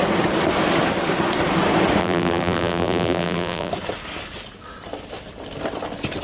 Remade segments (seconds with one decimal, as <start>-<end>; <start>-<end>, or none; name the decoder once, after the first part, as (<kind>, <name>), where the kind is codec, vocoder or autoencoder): 2.0-3.7 (vocoder, BigVGAN v2)